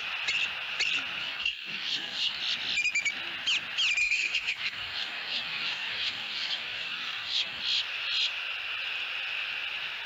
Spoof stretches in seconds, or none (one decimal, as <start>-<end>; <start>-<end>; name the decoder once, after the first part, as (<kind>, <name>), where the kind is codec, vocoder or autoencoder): 1.2-2.4 (codec, DAC); 4.0-7.6